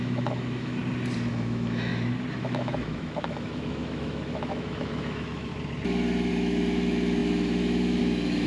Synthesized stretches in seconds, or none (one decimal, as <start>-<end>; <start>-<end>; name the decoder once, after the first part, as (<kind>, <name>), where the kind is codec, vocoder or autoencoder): 0.0-0.8 (autoencoder, DAC-VAE); 1.3-1.9; 2.4-5.5; 6.3-8.5